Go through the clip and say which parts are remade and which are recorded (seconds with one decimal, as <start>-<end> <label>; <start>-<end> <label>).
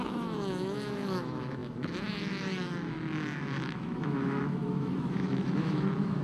0.0-6.2 remade